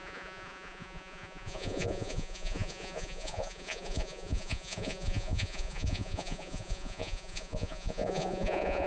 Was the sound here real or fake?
fake